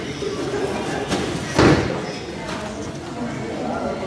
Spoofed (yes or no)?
yes